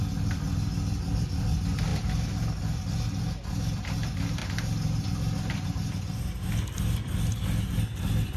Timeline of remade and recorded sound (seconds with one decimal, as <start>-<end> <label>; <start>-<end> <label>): 0.0-8.4 recorded